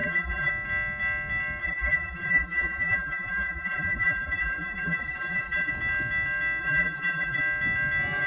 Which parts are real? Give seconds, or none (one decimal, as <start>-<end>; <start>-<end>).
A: 0.5-1.6; 5.7-6.6; 7.4-8.3

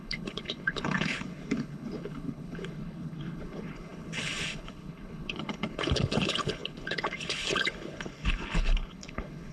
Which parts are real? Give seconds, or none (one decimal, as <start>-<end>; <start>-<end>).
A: none